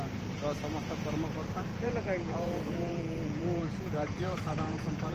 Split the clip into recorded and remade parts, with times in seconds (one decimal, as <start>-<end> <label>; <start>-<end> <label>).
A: 0.0-1.7 recorded; 1.7-5.1 remade